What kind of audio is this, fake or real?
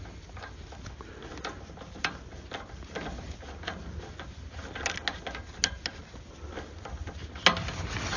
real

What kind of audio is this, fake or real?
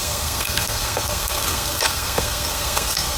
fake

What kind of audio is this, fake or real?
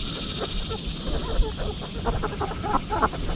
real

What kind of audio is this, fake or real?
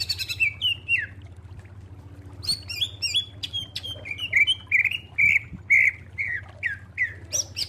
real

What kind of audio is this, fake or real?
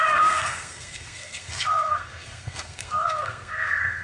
fake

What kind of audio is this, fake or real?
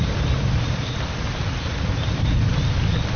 real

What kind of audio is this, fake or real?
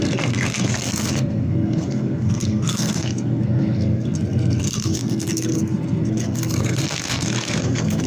fake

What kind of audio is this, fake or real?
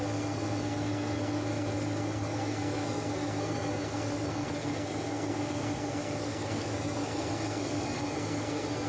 fake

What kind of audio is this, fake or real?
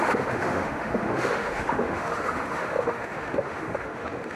fake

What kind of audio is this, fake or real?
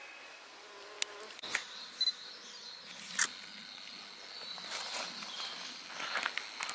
real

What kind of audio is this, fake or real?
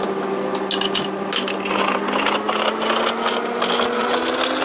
real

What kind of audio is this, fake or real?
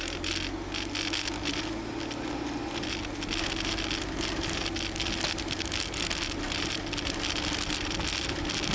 real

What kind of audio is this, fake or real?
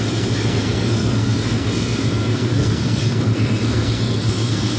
fake